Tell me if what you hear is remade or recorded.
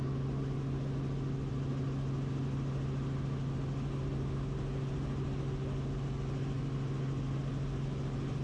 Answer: recorded